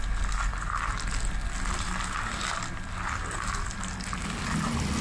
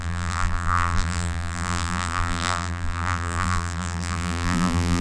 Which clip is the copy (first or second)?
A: second